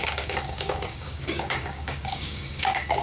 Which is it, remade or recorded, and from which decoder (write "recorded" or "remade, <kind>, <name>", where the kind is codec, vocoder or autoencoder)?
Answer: remade, codec, DAC